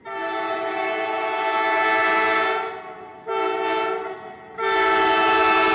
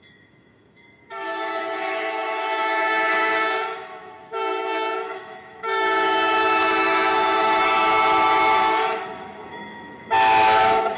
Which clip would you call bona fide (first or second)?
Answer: first